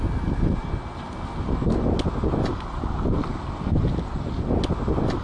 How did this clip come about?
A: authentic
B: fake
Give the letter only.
A